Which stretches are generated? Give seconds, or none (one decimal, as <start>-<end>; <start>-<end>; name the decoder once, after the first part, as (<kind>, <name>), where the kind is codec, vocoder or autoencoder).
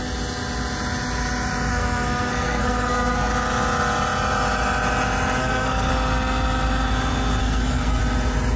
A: 1.7-3.3 (codec, SNAC); 5.4-5.9; 7.4-8.0